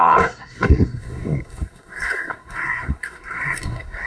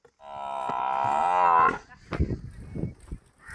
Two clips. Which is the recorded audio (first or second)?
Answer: second